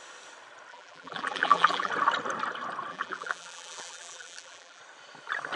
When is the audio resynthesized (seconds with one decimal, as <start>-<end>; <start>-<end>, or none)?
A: 0.7-1.9; 2.9-4.8